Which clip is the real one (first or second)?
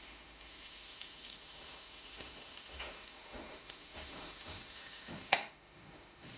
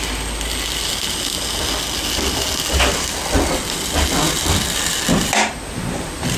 second